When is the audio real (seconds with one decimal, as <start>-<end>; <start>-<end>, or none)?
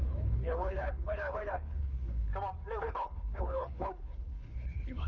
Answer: 2.3-2.8